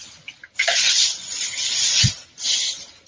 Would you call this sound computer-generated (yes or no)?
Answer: no